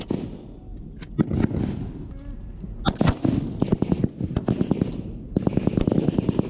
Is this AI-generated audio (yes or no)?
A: no